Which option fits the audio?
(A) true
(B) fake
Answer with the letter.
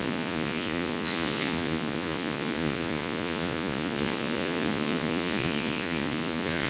B